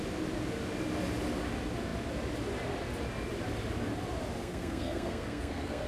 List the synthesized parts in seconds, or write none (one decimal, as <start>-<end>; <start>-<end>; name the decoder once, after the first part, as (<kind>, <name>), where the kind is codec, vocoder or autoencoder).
4.4-5.9 (codec, SNAC)